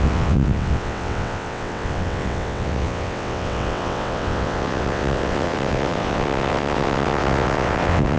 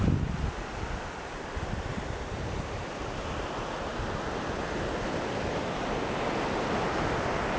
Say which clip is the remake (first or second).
first